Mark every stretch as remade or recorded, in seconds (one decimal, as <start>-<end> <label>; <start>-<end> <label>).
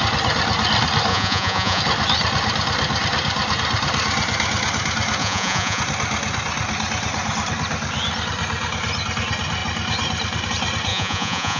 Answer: 0.0-1.1 recorded; 1.1-1.8 remade; 1.8-5.2 recorded; 5.2-5.8 remade; 5.8-10.9 recorded; 10.9-11.6 remade